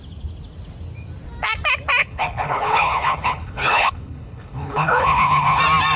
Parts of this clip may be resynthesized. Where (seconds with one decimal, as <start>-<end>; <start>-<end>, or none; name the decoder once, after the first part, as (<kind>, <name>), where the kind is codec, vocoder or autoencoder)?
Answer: 2.0-5.6 (codec, HILCodec)